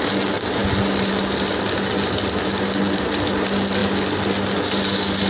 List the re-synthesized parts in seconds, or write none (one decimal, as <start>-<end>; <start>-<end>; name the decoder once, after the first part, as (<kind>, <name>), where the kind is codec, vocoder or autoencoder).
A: none

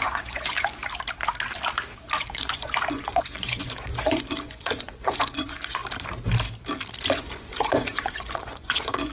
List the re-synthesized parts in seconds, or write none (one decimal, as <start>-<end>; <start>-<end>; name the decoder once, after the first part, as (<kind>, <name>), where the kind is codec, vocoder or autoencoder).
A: 0.0-0.8 (vocoder, Vocos); 2.2-5.8; 7.1-9.1

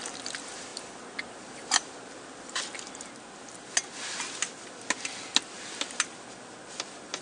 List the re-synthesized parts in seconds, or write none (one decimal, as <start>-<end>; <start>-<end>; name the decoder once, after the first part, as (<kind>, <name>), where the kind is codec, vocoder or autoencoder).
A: none

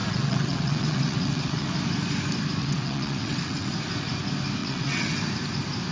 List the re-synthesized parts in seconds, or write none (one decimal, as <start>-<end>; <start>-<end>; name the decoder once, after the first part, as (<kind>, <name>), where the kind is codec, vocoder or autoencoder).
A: 0.0-1.7 (vocoder, WaveNeXt); 2.6-3.7; 4.6-5.1

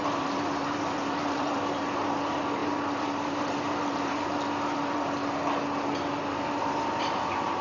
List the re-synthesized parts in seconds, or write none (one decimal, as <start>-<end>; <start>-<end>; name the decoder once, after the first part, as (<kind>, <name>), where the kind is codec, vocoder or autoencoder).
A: 0.0-5.2 (vocoder, BigVGAN v2); 6.3-7.6

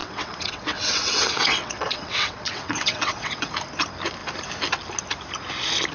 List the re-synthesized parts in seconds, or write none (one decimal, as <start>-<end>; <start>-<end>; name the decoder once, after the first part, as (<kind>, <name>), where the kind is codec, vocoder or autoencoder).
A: 0.0-3.5 (vocoder, WaveNeXt)